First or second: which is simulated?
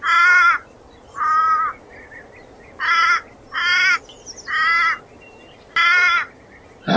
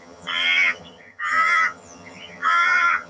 second